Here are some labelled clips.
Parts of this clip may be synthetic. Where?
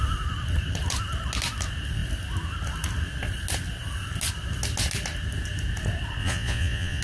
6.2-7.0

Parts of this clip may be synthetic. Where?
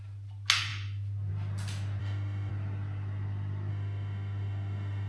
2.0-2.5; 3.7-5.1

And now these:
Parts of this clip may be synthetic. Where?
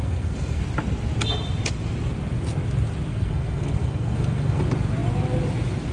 0.0-0.6; 3.1-4.6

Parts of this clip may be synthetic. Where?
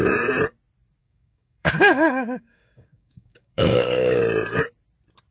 1.0-4.2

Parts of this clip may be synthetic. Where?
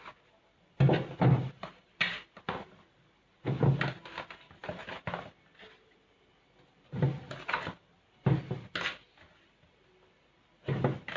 none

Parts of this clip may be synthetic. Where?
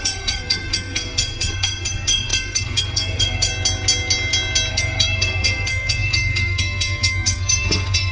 0.0-3.5; 4.7-8.1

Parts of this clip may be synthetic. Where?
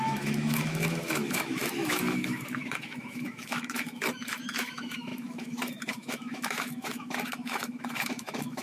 0.0-8.6